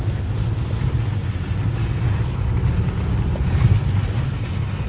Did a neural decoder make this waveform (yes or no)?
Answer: no